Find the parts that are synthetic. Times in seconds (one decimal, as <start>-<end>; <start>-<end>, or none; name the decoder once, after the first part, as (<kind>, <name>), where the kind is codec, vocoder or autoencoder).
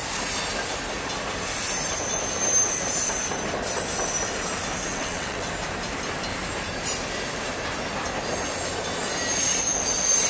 4.9-5.5 (vocoder, WaveNeXt)